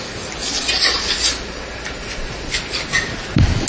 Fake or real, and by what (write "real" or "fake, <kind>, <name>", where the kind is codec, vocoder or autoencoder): real